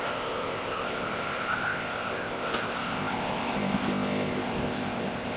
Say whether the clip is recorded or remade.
remade